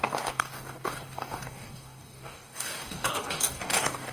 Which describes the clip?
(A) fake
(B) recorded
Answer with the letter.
A